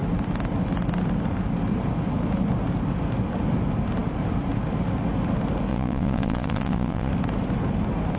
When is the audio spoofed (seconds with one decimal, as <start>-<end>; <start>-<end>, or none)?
5.7-7.1